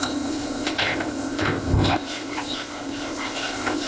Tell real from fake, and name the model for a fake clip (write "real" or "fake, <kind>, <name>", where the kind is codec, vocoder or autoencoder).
fake, codec, ZipCodec